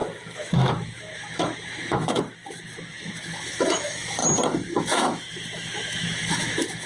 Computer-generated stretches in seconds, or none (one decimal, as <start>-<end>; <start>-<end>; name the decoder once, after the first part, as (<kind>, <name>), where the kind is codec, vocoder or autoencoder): 0.0-4.2 (autoencoder, DAC-VAE); 4.8-6.9